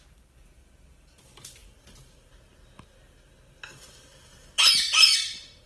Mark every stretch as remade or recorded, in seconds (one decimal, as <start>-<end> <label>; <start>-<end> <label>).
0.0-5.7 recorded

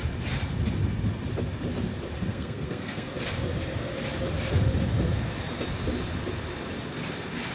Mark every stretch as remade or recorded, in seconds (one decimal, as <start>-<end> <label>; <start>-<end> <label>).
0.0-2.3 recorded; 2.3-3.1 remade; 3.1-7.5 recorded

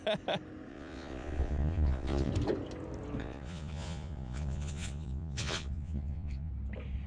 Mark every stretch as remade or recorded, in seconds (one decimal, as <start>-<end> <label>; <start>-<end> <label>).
0.0-0.7 recorded; 0.7-2.3 remade; 2.3-3.2 recorded; 3.2-6.5 remade; 6.5-7.1 recorded

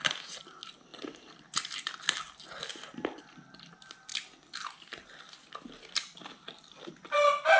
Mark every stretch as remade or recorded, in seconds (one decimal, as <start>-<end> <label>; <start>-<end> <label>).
0.0-7.6 recorded